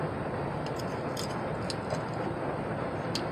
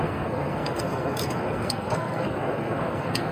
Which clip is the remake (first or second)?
second